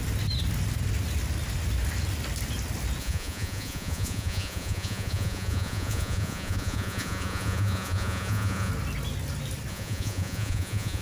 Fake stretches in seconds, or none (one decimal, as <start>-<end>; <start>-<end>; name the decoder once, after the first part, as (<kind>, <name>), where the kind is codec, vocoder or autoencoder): 3.0-8.7 (vocoder, Vocos); 9.7-11.0